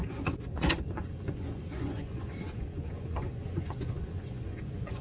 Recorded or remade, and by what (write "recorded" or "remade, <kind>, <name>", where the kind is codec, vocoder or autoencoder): remade, vocoder, Vocos